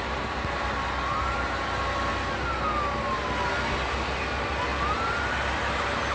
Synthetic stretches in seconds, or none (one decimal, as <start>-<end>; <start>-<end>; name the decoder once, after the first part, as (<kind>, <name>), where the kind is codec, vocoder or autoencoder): none